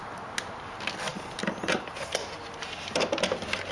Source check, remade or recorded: recorded